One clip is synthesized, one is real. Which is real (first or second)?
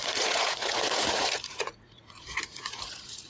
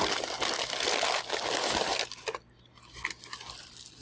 second